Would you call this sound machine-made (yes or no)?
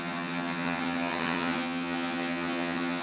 yes